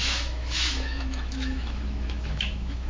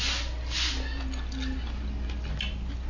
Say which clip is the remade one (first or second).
first